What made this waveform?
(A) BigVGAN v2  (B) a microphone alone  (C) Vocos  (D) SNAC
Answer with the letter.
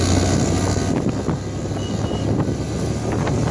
B